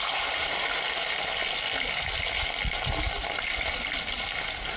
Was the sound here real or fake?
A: real